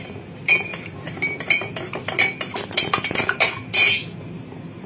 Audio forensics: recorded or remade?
recorded